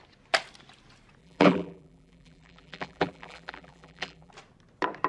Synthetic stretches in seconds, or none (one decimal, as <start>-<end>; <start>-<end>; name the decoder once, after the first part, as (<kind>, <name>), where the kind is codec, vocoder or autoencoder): 1.2-4.3 (vocoder, BigVGAN v2)